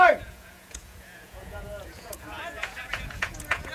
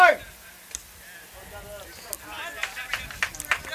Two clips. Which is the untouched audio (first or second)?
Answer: second